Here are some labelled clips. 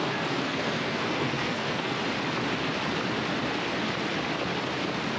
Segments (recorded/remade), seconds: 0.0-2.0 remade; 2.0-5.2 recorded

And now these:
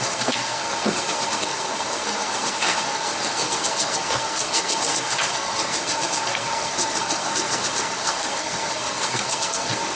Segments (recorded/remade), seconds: 0.0-10.0 remade

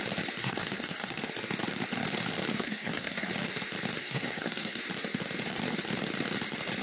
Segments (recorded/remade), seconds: 0.0-0.4 recorded; 0.4-1.3 remade; 1.3-2.5 recorded; 2.5-3.3 remade; 3.3-4.0 recorded; 4.0-4.8 remade; 4.8-6.8 recorded

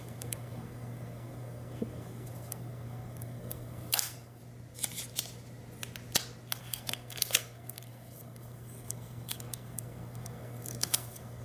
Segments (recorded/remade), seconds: 0.0-4.4 remade; 4.4-6.6 recorded; 6.6-11.4 remade

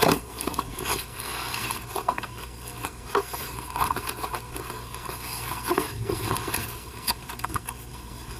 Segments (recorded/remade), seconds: 0.0-8.4 remade